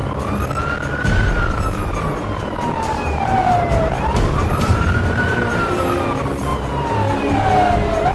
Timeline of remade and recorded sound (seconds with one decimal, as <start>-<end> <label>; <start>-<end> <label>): 0.0-0.5 remade; 0.5-0.9 recorded; 0.9-5.8 remade; 5.8-6.5 recorded; 6.5-7.3 remade; 7.3-8.1 recorded